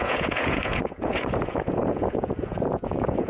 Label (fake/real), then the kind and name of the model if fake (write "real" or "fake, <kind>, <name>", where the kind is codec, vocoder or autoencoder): fake, vocoder, Vocos